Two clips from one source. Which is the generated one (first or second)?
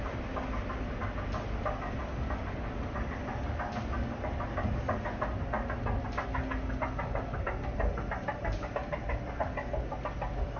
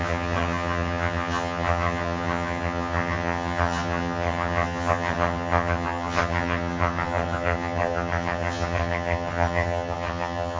second